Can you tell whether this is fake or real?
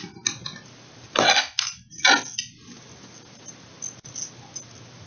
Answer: real